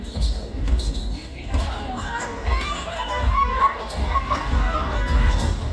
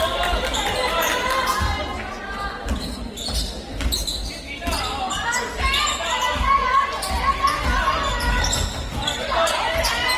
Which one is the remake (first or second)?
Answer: first